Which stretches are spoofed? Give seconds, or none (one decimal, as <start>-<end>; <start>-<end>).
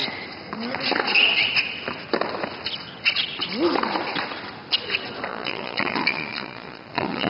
5.3-7.3